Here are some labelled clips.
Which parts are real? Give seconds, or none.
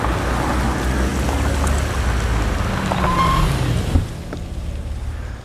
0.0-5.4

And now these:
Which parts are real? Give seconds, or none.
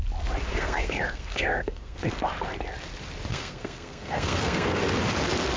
0.0-0.5; 2.0-3.3; 4.8-5.6